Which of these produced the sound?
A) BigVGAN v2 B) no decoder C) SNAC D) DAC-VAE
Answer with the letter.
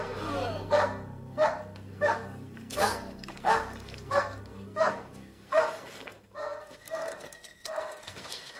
C